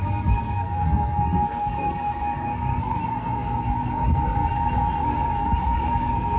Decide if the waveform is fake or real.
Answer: fake